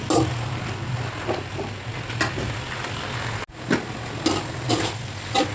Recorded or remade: recorded